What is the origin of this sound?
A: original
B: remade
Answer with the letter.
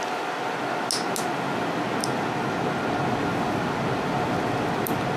A